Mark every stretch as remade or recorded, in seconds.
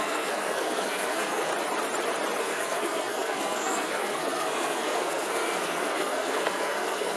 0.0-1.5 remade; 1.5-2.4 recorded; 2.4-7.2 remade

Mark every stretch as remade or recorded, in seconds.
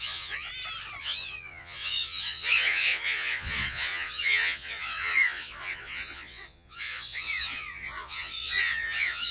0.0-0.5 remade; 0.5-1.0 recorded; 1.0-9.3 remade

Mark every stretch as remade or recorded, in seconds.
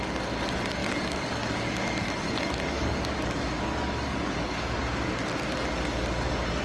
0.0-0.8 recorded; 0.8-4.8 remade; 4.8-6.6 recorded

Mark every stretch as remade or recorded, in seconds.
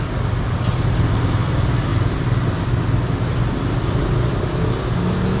0.0-5.4 recorded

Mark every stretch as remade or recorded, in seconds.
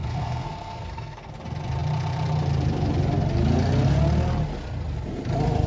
0.0-1.3 remade; 1.3-5.7 recorded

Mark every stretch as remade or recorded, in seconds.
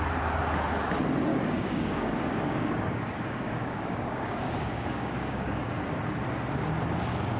0.0-1.3 recorded; 1.3-5.7 remade; 5.7-7.4 recorded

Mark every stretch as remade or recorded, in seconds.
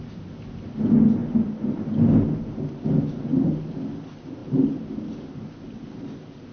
0.0-6.5 recorded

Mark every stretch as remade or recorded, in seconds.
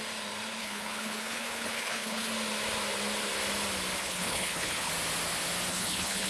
0.0-0.6 recorded; 0.6-2.3 remade; 2.3-4.0 recorded; 4.0-4.9 remade; 4.9-5.7 recorded; 5.7-6.3 remade